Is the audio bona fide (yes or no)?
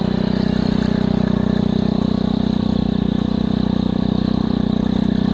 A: yes